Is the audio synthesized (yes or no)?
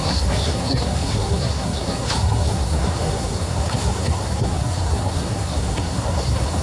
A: yes